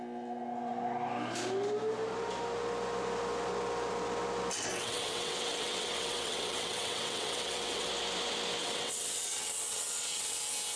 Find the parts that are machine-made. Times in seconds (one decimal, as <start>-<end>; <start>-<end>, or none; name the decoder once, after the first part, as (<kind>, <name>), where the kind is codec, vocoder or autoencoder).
4.7-7.9 (vocoder, WaveNeXt); 8.6-10.4